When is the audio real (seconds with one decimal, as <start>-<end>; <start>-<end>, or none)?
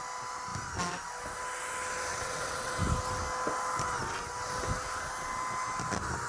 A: 0.0-2.1; 2.7-6.3